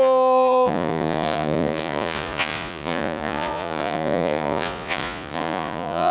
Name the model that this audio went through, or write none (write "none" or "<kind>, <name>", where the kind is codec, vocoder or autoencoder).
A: vocoder, Vocos